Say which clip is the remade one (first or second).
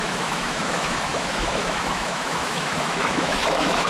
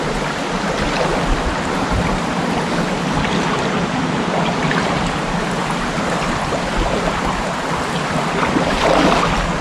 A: first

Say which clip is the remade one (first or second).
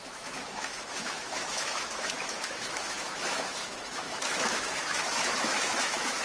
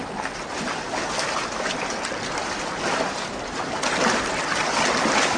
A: first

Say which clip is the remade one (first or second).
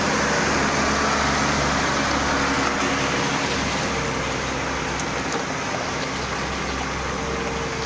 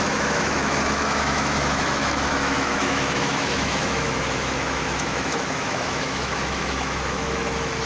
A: second